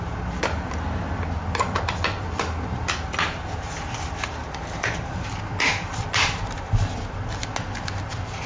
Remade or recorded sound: recorded